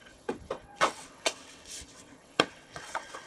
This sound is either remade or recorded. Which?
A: remade